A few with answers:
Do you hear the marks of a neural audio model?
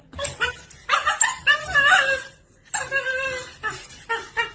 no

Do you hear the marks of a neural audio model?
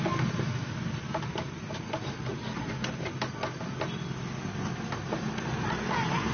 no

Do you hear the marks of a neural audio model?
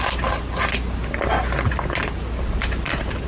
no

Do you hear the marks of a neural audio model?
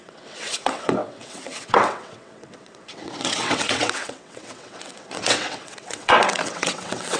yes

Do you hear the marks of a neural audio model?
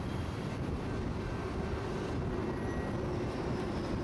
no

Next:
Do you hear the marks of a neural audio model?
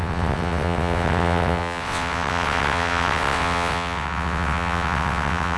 yes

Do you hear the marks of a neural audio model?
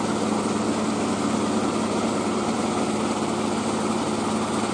no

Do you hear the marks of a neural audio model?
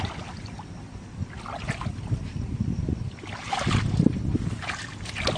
no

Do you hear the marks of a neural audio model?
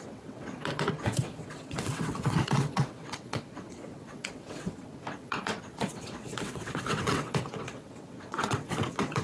yes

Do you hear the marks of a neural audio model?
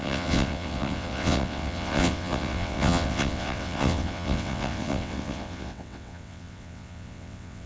yes